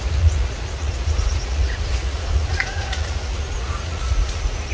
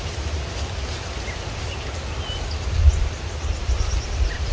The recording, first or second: second